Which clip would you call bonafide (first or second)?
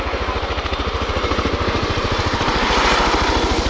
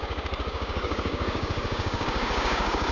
first